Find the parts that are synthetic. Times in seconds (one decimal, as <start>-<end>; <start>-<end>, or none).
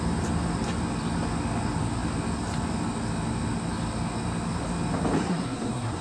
5.2-6.0